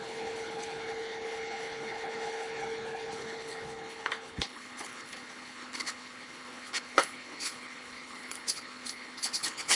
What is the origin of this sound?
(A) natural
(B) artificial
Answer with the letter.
B